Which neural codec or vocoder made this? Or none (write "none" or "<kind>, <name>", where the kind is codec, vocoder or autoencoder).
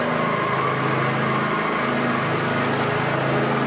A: none